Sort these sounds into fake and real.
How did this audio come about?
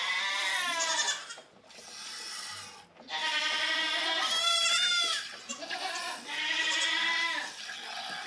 real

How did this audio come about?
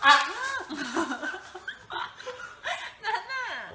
real